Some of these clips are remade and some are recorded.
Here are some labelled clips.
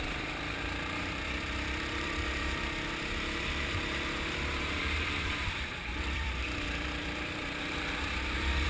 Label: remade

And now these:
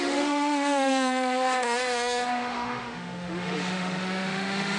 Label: remade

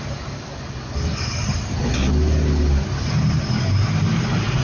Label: recorded